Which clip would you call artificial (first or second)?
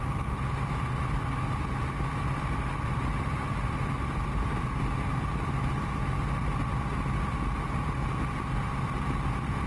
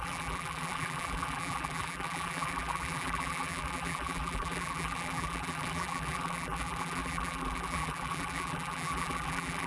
second